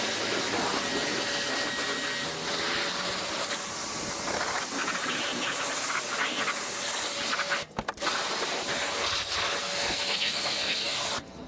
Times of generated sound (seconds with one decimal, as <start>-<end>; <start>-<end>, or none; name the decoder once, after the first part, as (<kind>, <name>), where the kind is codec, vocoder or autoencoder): 9.6-11.1 (codec, SNAC)